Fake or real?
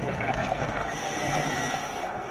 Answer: fake